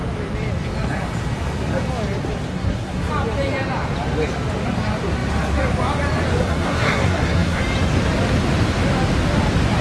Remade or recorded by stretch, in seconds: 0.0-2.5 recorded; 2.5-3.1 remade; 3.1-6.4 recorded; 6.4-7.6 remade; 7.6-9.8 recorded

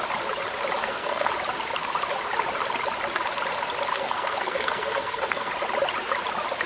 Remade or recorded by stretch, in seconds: 0.0-0.8 recorded; 0.8-1.3 remade; 1.3-3.9 recorded; 3.9-5.5 remade; 5.5-6.7 recorded

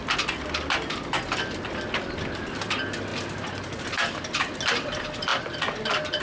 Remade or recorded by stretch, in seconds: 0.0-6.2 recorded

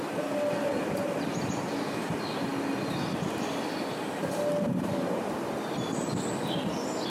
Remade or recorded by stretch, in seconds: 0.0-0.7 recorded; 0.7-1.5 remade; 1.5-7.1 recorded